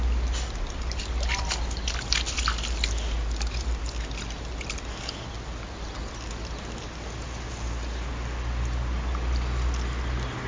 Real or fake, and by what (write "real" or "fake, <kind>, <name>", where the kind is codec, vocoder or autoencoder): real